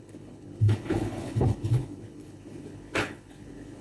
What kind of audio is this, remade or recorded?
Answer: remade